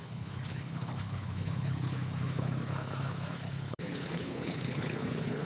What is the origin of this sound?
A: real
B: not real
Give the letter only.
B